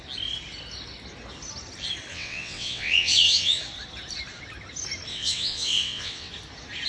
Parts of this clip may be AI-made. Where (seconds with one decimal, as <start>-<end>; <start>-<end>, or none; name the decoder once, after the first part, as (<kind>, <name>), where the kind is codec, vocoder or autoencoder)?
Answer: 2.1-3.6 (vocoder, WaveNeXt); 5.1-6.3